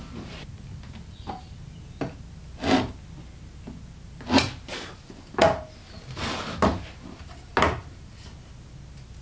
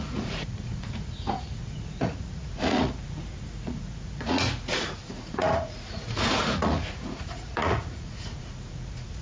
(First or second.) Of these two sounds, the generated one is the second